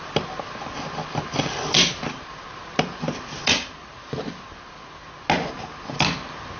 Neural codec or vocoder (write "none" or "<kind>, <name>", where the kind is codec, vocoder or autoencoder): none